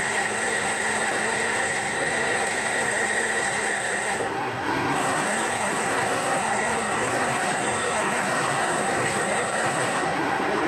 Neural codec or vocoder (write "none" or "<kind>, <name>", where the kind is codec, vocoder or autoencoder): codec, SNAC